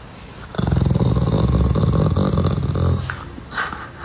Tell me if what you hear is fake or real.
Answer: real